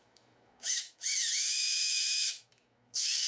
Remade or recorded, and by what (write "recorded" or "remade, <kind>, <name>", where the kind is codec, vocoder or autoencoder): remade, autoencoder, DAC-VAE